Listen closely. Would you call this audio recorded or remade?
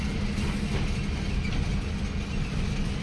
recorded